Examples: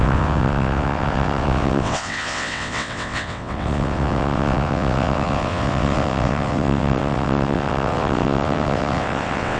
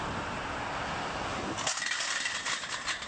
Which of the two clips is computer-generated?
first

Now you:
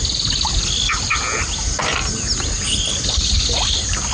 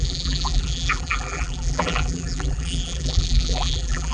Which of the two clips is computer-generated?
second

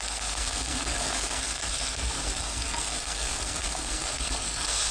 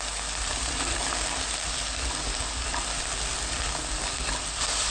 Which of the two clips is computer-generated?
first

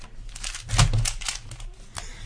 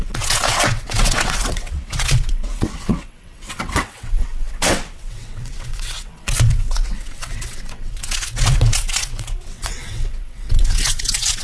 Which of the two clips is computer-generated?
second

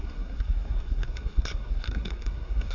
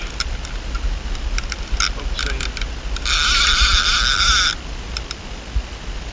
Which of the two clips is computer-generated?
first